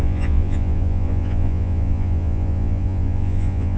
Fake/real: fake